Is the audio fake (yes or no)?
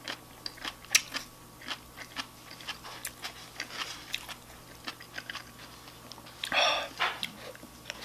no